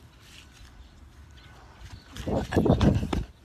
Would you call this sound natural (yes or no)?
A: yes